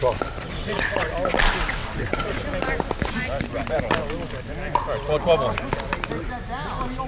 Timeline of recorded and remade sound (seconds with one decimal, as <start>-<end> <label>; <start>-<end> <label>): 0.0-0.6 recorded; 0.6-1.1 remade; 1.1-1.8 recorded; 1.8-2.4 remade; 2.4-7.1 recorded

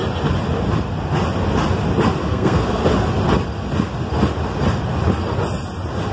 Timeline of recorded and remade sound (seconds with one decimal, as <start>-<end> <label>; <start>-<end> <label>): 0.0-2.2 recorded; 2.2-2.8 remade; 2.8-6.1 recorded